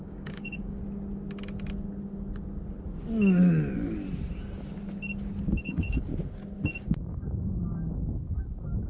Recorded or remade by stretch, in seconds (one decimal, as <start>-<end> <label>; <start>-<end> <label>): 0.0-0.8 remade; 0.8-5.6 recorded; 5.6-6.1 remade; 6.1-6.7 recorded; 6.7-8.9 remade